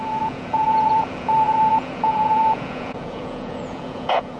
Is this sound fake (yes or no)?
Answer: yes